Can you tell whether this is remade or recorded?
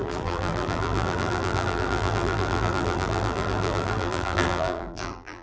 remade